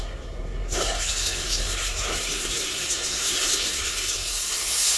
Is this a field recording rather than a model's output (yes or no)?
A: no